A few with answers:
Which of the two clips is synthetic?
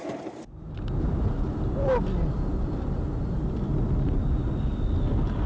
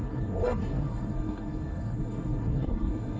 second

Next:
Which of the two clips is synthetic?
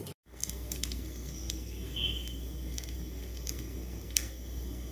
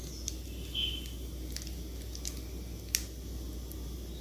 first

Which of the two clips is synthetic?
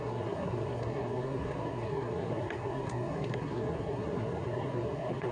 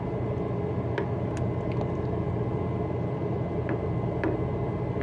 first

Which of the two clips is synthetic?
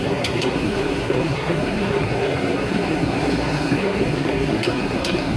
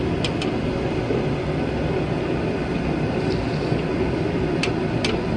first